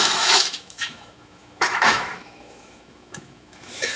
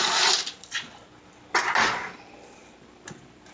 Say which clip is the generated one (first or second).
first